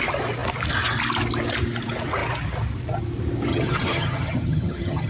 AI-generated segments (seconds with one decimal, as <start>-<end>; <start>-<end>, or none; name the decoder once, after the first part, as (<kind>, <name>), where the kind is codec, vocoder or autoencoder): 3.5-5.1 (vocoder, HiFi-GAN)